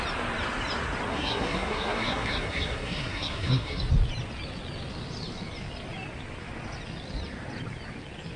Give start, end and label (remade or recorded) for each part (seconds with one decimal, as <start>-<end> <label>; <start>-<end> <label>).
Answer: 0.0-1.1 recorded; 1.1-3.8 remade; 3.8-8.4 recorded